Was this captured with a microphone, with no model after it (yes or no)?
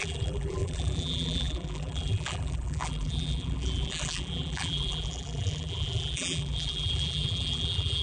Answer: no